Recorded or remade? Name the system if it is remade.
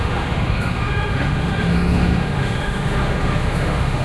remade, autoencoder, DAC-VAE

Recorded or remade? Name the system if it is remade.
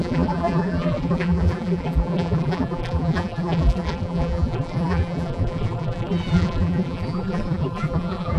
remade, vocoder, BigVGAN v2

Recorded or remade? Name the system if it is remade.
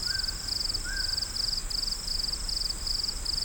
recorded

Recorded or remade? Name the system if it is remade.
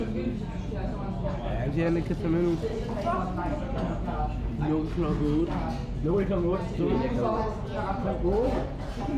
recorded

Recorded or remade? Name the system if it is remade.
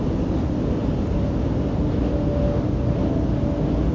recorded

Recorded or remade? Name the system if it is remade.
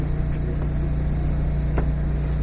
recorded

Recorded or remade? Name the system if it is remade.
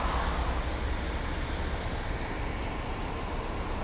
recorded